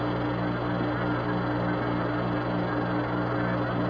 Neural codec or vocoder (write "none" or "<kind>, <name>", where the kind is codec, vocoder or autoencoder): none